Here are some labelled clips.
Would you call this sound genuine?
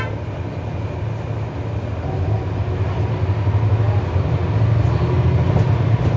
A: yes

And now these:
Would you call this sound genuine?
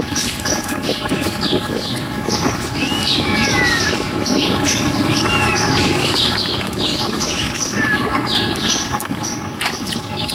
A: no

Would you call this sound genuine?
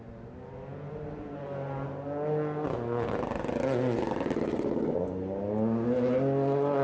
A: yes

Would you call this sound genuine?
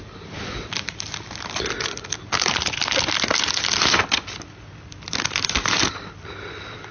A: yes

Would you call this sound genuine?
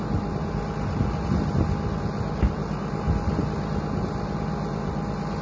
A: yes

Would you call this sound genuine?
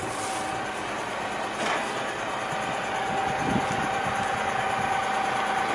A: yes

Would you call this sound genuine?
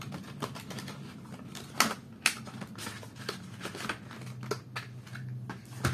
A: yes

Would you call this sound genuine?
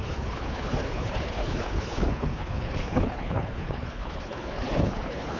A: no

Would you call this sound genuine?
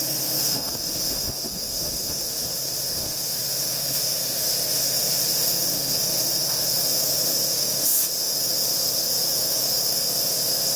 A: no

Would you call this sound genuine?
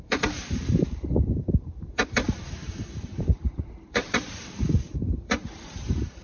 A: no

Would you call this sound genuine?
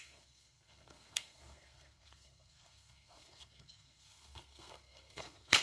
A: no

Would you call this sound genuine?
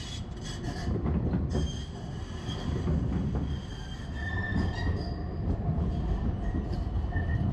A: yes